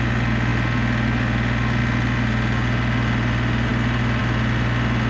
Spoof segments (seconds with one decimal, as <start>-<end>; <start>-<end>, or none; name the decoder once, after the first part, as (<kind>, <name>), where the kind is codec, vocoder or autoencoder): none